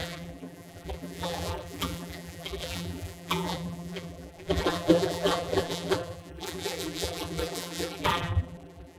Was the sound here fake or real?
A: fake